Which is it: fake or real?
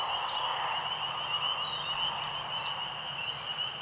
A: real